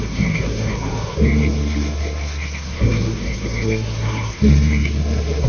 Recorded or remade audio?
remade